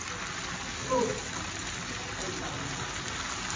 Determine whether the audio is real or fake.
real